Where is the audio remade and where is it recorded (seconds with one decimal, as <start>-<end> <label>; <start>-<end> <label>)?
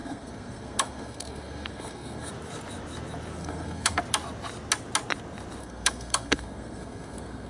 0.0-2.3 remade; 2.3-3.4 recorded; 3.4-4.0 remade; 4.0-5.6 recorded; 5.6-7.5 remade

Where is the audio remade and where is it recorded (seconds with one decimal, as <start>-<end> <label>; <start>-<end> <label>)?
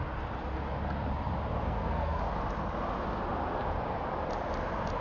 0.0-1.6 recorded; 1.6-2.2 remade; 2.2-5.0 recorded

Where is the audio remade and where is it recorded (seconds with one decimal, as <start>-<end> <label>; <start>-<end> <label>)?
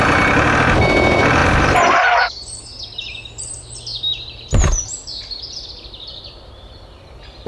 0.0-7.5 recorded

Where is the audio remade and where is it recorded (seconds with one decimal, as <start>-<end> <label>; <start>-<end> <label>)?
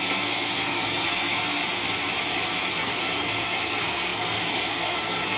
0.0-1.6 remade; 1.6-2.7 recorded; 2.7-5.4 remade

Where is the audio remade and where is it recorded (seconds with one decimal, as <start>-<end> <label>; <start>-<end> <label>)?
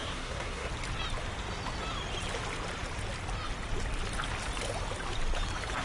0.0-0.7 remade; 0.7-5.8 recorded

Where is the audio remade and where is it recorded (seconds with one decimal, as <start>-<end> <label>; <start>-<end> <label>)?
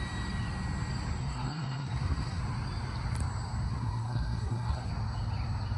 0.0-1.2 recorded; 1.2-2.4 remade; 2.4-3.7 recorded; 3.7-4.9 remade; 4.9-5.8 recorded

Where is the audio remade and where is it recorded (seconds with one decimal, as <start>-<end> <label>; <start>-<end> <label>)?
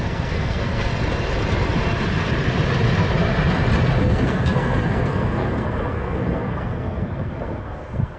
0.0-0.9 remade; 0.9-4.0 recorded; 4.0-8.2 remade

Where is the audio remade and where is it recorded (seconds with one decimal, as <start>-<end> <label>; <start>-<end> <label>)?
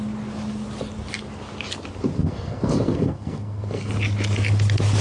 0.0-2.2 recorded; 2.2-3.9 remade; 3.9-5.0 recorded